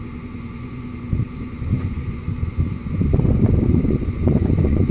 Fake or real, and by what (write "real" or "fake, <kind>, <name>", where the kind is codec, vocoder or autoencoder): fake, vocoder, Vocos